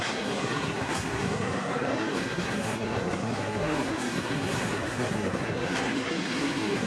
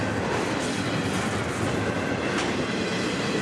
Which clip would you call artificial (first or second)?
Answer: first